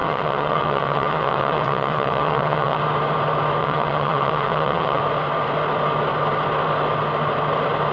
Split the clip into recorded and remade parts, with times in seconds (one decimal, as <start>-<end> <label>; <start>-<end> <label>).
0.0-2.8 remade; 2.8-3.6 recorded; 3.6-5.0 remade; 5.0-7.9 recorded